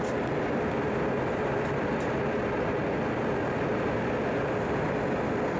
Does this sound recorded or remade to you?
recorded